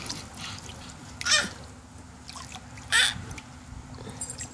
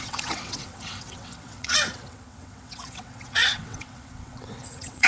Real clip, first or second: first